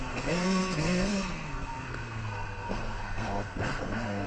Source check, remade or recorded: remade